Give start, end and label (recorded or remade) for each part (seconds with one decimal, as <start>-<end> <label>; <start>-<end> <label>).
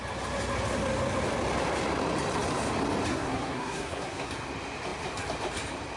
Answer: 0.0-3.1 recorded; 3.1-4.3 remade; 4.3-6.0 recorded